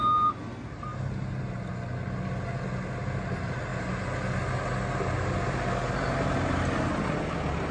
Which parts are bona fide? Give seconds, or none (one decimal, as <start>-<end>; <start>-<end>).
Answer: 0.0-7.7